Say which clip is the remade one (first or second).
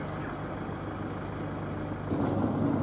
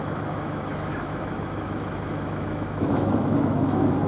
second